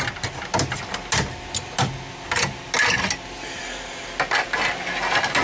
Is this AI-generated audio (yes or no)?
no